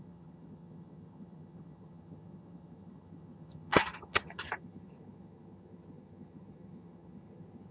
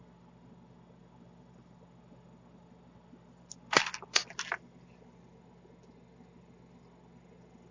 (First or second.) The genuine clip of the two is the second